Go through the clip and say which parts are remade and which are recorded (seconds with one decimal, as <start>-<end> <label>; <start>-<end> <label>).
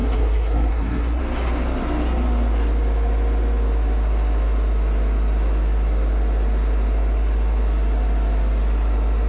0.0-1.2 remade; 1.2-9.3 recorded